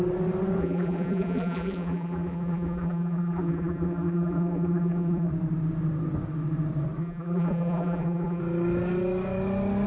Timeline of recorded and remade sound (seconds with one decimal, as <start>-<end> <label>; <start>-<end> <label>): 0.0-0.6 recorded; 0.6-5.3 remade; 5.3-7.0 recorded; 7.0-8.4 remade; 8.4-9.9 recorded